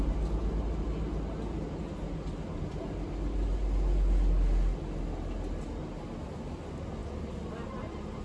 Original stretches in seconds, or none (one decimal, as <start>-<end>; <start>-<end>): 0.0-8.2